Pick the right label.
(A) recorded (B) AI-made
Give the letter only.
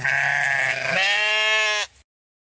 A